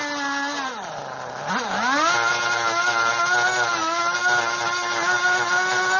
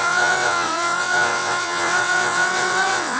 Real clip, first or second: first